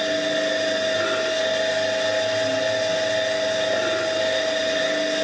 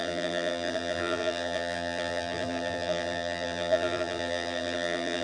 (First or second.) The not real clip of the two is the second